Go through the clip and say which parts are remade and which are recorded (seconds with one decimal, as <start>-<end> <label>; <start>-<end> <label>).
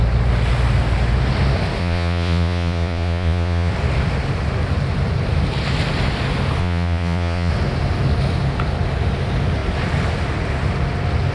0.0-1.8 recorded; 1.8-3.7 remade; 3.7-6.6 recorded; 6.6-7.5 remade; 7.5-11.3 recorded